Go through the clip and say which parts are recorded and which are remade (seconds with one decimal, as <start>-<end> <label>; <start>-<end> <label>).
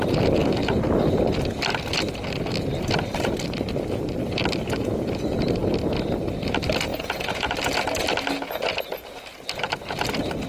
0.0-6.9 recorded; 6.9-7.5 remade; 7.5-10.5 recorded